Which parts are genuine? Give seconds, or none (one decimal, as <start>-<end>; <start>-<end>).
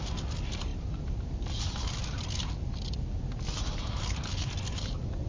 0.0-5.3